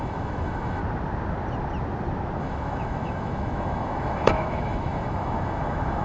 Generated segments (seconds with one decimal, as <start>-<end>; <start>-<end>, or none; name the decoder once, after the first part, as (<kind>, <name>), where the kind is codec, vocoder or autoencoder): 0.0-0.8 (autoencoder, DAC-VAE); 2.4-6.0